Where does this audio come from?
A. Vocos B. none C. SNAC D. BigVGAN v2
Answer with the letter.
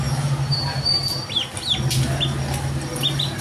B